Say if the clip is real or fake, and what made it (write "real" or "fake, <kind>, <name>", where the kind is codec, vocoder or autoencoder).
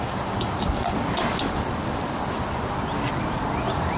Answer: real